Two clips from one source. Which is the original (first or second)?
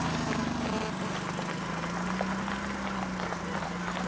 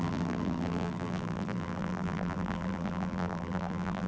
first